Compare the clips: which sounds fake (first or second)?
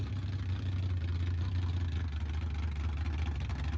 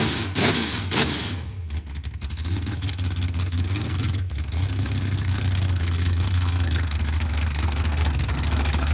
second